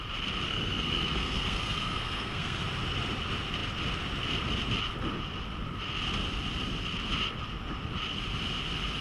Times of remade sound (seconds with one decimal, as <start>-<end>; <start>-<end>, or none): 0.5-2.6